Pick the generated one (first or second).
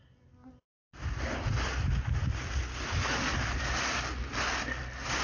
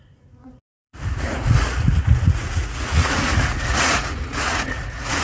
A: second